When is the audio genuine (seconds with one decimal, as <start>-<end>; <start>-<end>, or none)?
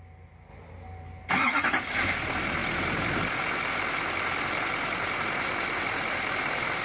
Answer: 0.0-6.8